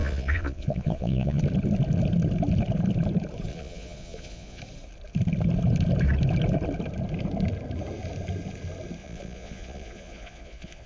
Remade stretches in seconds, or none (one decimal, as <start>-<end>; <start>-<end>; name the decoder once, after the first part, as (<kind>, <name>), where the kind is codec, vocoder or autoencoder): 0.0-1.4 (vocoder, Vocos); 3.5-4.6; 9.0-10.9